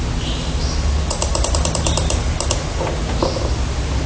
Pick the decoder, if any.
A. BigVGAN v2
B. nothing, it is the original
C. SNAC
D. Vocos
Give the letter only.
B